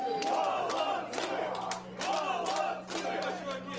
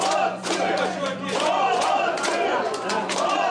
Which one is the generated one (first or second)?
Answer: second